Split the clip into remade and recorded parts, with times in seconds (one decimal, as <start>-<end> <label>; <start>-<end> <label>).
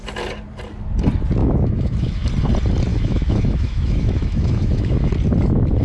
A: 0.0-1.4 recorded; 1.4-2.3 remade; 2.3-2.9 recorded; 2.9-5.1 remade; 5.1-5.8 recorded